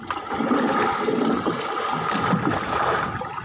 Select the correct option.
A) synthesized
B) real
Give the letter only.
B